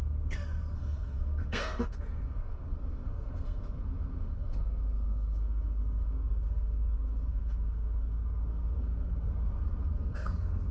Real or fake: fake